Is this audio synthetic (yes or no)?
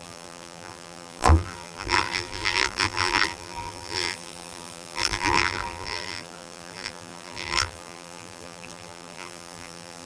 yes